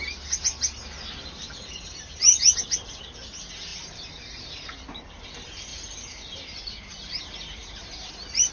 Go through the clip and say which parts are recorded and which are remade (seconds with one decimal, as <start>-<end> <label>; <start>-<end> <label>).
0.0-2.1 recorded; 2.1-2.9 remade; 2.9-3.7 recorded; 3.7-5.3 remade; 5.3-5.7 recorded; 5.7-8.1 remade; 8.1-8.5 recorded

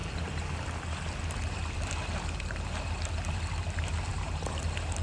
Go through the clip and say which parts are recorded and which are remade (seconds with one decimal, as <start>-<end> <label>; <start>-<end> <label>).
0.0-4.1 recorded; 4.1-4.6 remade; 4.6-5.0 recorded

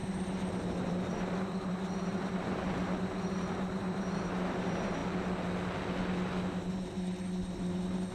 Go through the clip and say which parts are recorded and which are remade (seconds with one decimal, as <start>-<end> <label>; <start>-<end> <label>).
0.0-5.0 remade; 5.0-6.7 recorded; 6.7-8.1 remade